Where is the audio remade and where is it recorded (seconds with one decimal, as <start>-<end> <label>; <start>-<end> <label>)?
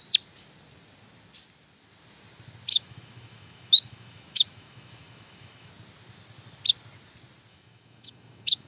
0.0-2.7 recorded; 2.7-5.7 remade; 5.7-7.5 recorded; 7.5-8.7 remade